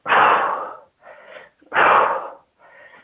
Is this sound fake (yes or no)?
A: no